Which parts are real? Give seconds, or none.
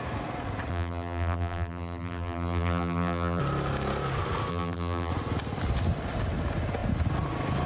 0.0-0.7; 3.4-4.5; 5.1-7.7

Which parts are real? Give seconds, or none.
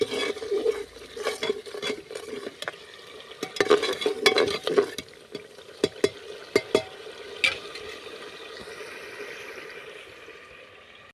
0.0-11.1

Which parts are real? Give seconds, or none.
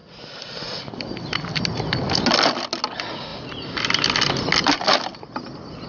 0.0-5.9